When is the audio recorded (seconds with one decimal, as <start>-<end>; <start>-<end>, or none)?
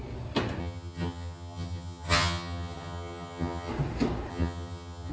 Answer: 0.0-0.6; 3.7-4.3